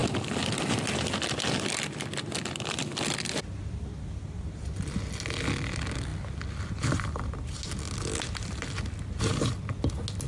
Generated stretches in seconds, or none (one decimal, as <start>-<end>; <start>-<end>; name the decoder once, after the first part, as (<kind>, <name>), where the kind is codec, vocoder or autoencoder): none